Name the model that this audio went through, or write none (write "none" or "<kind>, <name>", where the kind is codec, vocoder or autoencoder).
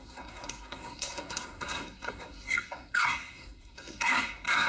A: codec, SNAC